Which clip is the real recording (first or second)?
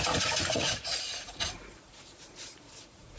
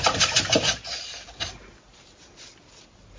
second